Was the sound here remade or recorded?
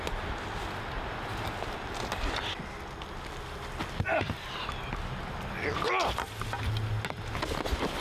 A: recorded